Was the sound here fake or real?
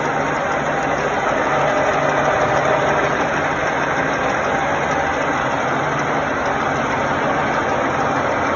real